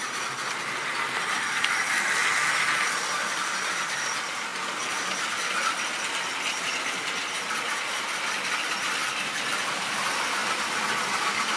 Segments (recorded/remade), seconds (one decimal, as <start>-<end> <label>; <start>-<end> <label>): 0.0-4.5 remade; 4.5-9.2 recorded; 9.2-10.4 remade; 10.4-11.0 recorded; 11.0-11.6 remade